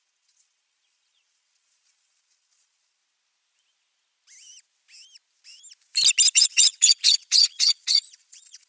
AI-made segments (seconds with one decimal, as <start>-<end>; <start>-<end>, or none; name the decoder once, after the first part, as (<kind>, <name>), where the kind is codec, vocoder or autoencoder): 0.0-3.0 (vocoder, Vocos); 6.3-8.7